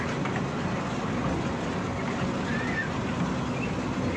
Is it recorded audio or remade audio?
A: recorded